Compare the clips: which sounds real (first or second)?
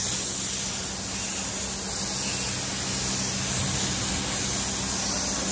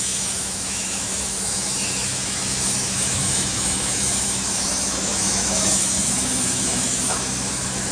first